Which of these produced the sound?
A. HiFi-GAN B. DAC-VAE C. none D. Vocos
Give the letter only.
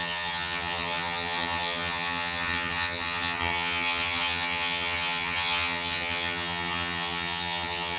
A